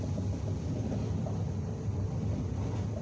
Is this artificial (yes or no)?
no